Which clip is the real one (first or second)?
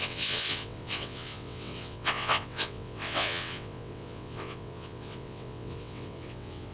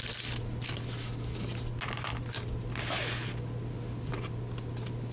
second